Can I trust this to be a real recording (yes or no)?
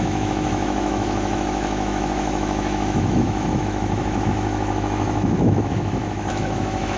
no